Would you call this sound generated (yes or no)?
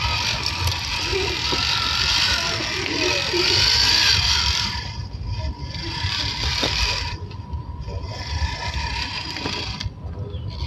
no